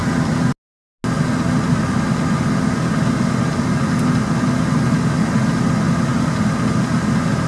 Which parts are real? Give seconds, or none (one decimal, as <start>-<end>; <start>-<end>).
0.0-7.5